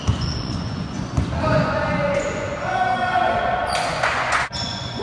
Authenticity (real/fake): fake